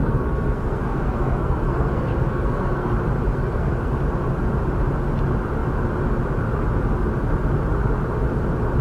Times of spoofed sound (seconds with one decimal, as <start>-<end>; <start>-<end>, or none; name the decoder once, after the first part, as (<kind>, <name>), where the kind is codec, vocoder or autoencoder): 0.0-2.9 (codec, SNAC); 3.3-3.9